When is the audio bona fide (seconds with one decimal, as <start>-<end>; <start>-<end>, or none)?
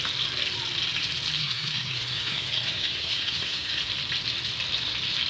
0.0-1.4; 3.8-5.3